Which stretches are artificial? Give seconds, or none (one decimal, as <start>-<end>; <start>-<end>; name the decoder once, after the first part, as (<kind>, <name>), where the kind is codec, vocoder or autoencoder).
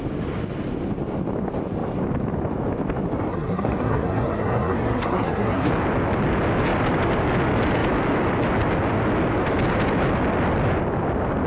3.3-5.7 (codec, SNAC)